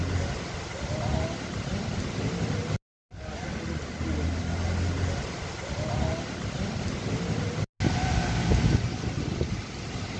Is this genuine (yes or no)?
yes